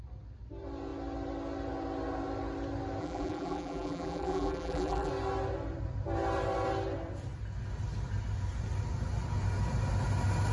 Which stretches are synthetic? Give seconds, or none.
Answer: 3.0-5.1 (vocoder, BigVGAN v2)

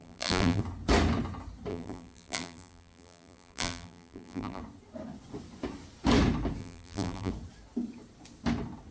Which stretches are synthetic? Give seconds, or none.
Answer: 0.0-0.6 (vocoder, BigVGAN v2); 1.7-4.6; 6.6-7.3

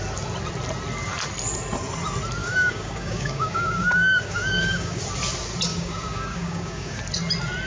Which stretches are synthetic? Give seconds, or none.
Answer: 2.4-5.0 (codec, DAC); 5.7-7.0